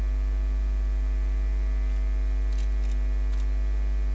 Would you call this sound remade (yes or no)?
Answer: no